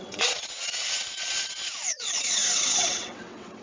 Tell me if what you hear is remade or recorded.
remade